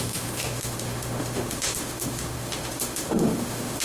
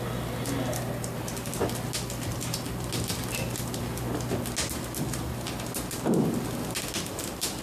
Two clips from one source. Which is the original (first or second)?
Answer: second